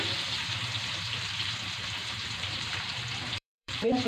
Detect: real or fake fake